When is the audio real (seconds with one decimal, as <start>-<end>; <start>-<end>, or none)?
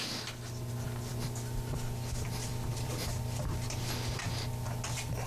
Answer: 0.0-5.3